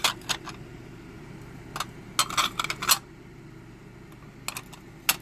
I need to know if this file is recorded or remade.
recorded